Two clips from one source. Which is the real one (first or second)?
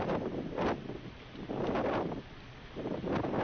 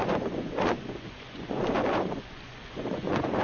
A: first